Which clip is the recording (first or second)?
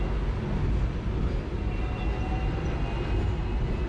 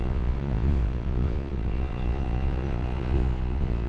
first